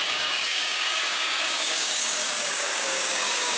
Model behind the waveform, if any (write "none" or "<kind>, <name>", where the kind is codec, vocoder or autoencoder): codec, DAC